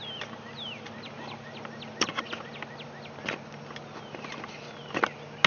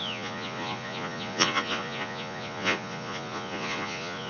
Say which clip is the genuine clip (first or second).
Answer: first